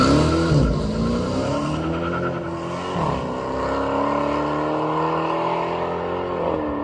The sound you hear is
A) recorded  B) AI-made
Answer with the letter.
A